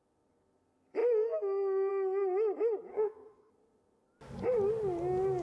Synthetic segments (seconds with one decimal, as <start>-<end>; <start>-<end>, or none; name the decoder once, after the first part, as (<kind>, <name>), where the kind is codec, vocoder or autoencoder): 2.9-3.5 (codec, DAC)